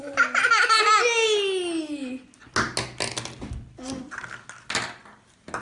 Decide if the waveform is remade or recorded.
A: recorded